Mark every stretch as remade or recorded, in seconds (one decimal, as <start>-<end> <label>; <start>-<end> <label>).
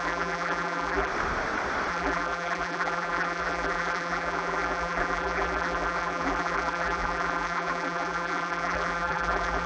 0.0-1.1 remade; 1.1-1.9 recorded; 1.9-9.7 remade